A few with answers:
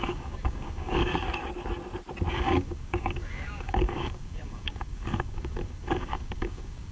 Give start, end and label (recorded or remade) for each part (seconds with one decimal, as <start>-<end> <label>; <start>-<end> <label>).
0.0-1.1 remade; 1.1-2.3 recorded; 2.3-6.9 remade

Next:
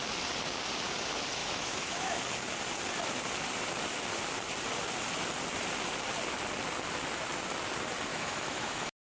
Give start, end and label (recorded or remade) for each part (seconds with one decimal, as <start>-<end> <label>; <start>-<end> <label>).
0.0-1.4 recorded; 1.4-2.2 remade; 2.2-8.1 recorded; 8.1-9.2 remade

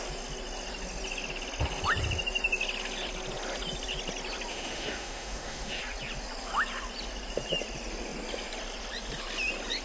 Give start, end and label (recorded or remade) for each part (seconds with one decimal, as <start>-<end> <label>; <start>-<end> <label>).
0.0-4.5 recorded; 4.5-5.8 remade; 5.8-9.8 recorded

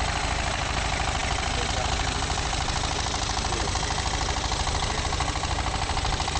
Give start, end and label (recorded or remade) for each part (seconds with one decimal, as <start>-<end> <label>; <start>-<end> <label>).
0.0-6.4 recorded